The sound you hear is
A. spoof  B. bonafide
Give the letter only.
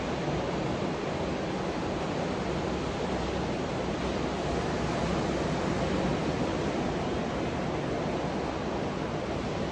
B